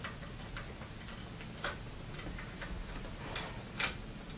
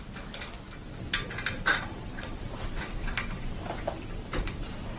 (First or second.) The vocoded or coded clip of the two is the second